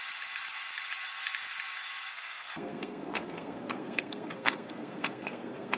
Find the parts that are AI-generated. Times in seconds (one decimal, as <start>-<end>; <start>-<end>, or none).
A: 2.1-5.8